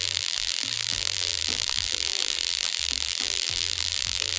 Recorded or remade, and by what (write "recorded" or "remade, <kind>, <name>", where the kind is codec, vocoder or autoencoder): remade, vocoder, BigVGAN v2